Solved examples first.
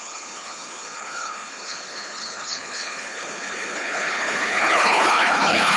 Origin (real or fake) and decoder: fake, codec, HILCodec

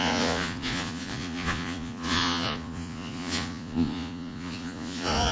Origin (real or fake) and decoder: fake, vocoder, Vocos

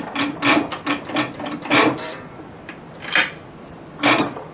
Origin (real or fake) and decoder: real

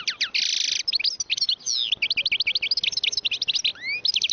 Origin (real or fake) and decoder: real